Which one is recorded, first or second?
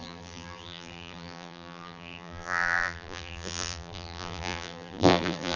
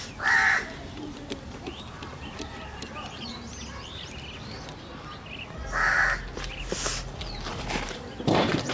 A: second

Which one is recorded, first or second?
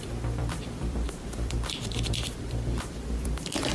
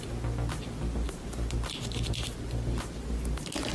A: second